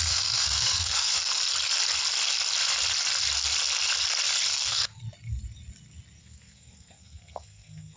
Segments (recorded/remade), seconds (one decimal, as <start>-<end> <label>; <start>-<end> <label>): 0.0-1.3 remade; 1.3-4.5 recorded; 4.5-5.0 remade; 5.0-6.2 recorded; 6.2-8.0 remade